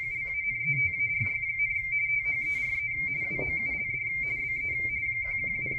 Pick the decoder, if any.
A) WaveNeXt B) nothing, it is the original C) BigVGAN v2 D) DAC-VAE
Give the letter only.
C